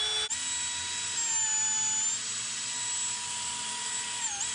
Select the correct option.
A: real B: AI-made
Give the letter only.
A